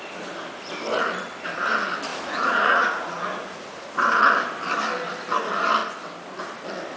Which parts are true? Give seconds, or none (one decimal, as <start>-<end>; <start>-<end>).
0.0-2.1; 3.9-7.0